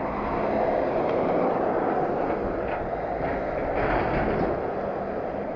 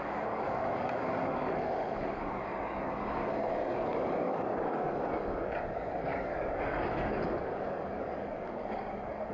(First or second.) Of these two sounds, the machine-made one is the second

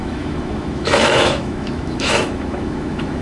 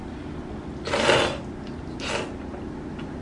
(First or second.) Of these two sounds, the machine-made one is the first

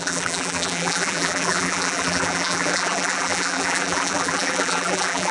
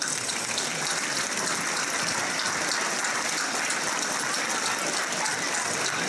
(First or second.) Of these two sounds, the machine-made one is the first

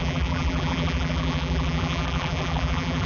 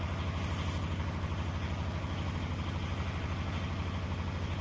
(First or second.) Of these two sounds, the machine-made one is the first